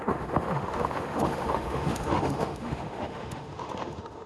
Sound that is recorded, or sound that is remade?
remade